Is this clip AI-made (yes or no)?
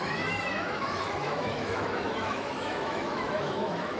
yes